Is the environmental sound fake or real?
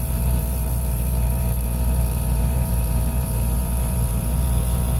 fake